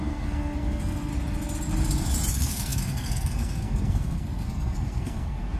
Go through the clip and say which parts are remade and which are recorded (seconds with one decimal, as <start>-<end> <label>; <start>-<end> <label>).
0.0-1.1 remade; 1.1-2.3 recorded; 2.3-5.6 remade